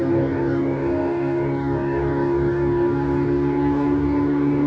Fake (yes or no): yes